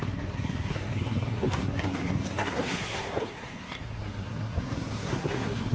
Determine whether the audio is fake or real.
fake